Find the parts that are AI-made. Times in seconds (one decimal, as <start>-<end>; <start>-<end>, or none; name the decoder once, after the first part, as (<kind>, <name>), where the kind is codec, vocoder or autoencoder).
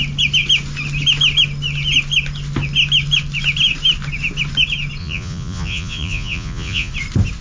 5.0-6.9 (vocoder, Vocos)